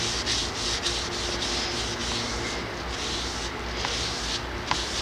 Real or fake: real